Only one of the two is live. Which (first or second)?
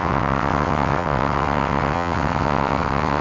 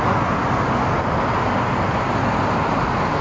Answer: second